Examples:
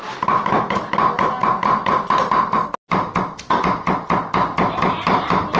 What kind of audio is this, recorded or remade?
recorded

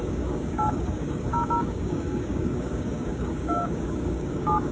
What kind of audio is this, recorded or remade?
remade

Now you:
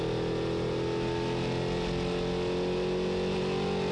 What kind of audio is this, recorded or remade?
recorded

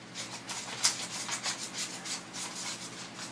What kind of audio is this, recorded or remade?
recorded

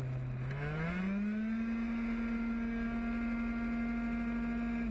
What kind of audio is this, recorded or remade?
recorded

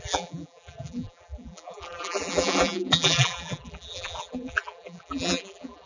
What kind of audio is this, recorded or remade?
remade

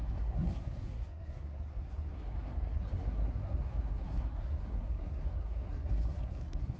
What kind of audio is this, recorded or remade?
remade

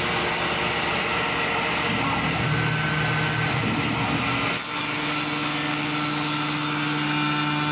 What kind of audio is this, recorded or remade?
recorded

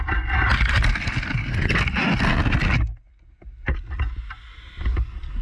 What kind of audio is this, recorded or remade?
recorded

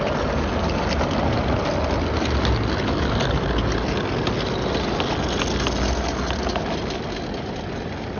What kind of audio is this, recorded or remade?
recorded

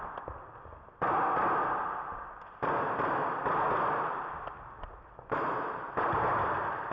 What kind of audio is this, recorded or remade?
recorded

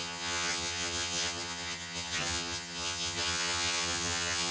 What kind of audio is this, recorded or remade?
remade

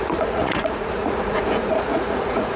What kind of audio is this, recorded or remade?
remade